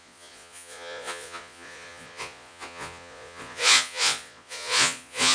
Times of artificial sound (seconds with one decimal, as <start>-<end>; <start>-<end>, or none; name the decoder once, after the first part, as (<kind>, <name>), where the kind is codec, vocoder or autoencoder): 0.0-5.3 (vocoder, Vocos)